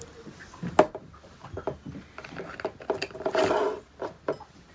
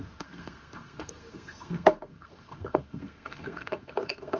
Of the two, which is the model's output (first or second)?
second